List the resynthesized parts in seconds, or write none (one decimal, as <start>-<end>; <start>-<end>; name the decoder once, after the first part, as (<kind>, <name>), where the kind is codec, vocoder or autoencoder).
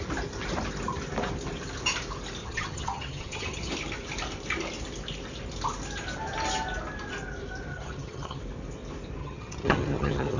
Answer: 2.4-3.7 (vocoder, HiFi-GAN); 7.7-8.4; 9.2-10.4